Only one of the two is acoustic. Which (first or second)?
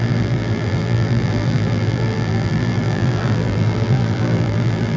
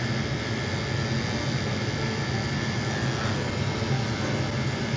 second